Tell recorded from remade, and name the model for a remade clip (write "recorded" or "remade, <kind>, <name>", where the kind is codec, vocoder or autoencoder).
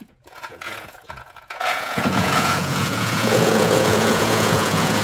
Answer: remade, vocoder, Vocos